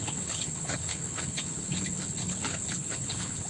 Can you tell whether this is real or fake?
fake